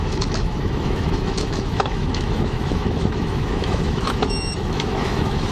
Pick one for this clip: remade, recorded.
remade